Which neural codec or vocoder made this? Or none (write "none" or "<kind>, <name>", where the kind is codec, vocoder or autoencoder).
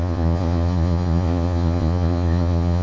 vocoder, Vocos